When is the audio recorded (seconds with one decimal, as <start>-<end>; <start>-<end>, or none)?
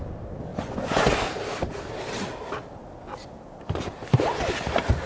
0.0-0.5; 1.1-5.1